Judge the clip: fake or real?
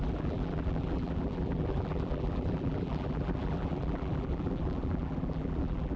fake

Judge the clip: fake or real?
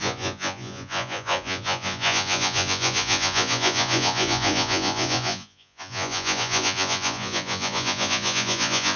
fake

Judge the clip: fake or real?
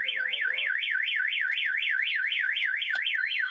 fake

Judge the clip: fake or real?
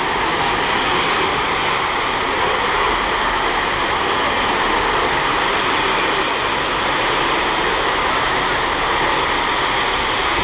real